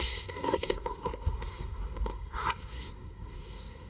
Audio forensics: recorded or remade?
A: remade